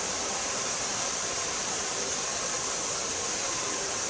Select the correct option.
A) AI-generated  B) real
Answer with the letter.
A